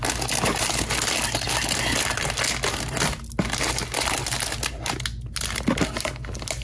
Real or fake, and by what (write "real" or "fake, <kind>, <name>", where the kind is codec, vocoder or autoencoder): real